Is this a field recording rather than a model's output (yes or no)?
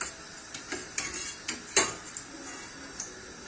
yes